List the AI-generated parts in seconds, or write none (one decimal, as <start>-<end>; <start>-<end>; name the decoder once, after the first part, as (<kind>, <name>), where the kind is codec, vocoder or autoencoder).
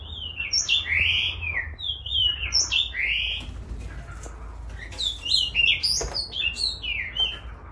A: none